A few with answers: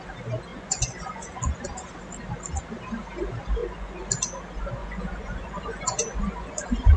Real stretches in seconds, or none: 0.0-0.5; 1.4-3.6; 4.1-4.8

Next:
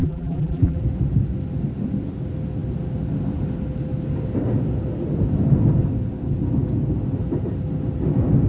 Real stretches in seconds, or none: 0.8-8.5

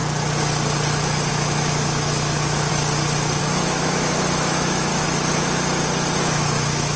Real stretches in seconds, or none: 0.0-1.3; 2.7-3.4; 4.9-6.2